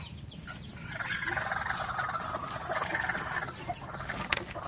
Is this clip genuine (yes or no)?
yes